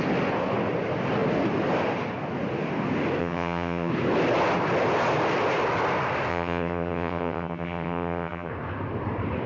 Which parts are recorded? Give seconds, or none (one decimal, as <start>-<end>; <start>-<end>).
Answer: 0.0-3.2; 3.9-6.3; 8.5-9.5